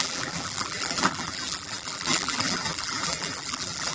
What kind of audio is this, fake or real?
fake